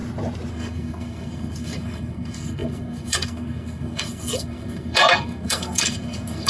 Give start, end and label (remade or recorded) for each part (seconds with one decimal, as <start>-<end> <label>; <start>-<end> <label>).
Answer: 0.0-0.5 recorded; 0.5-6.5 remade